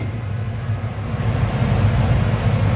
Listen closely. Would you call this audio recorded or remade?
recorded